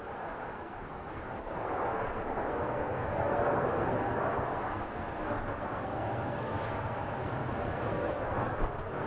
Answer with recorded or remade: remade